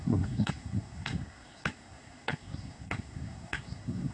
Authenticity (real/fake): fake